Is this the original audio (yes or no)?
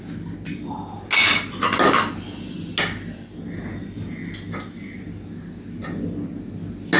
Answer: yes